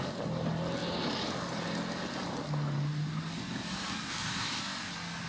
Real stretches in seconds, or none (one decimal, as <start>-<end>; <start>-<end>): 0.0-4.1; 4.6-5.3